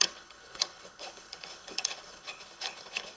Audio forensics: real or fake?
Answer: fake